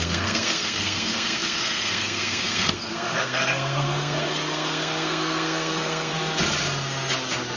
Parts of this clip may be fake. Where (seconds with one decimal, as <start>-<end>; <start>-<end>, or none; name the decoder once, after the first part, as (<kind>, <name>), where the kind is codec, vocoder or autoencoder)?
0.0-6.1 (codec, SNAC)